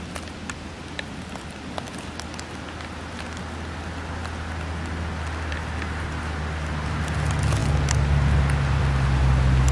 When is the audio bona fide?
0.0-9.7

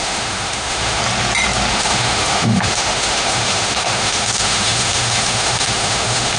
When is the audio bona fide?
1.0-1.7

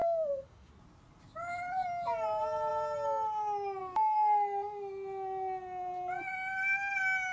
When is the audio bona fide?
0.7-7.3